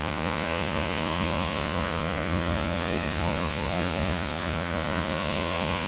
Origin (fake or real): fake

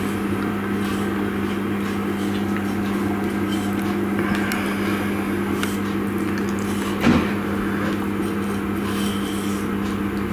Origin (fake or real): real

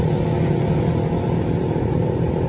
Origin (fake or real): real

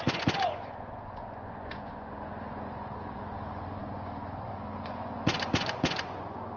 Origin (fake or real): fake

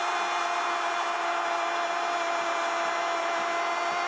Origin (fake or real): real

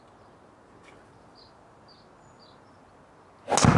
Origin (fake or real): real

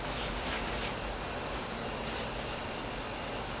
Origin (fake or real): real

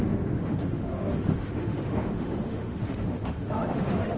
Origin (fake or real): fake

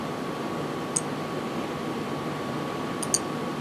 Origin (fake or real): real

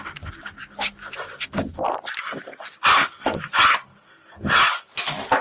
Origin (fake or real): real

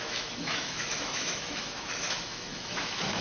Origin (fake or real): fake